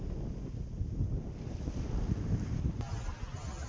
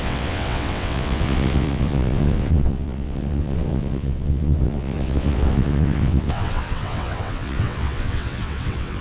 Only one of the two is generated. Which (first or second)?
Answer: second